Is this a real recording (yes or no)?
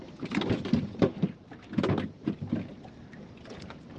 yes